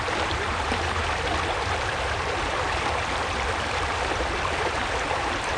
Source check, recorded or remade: remade